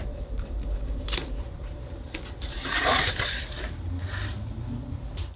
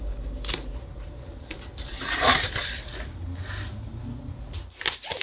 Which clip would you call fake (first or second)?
first